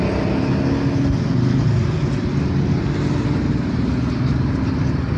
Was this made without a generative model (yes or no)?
yes